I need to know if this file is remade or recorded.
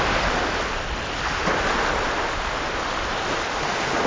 recorded